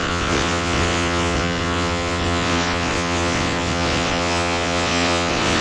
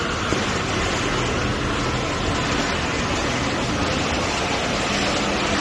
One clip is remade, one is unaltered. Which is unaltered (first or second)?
second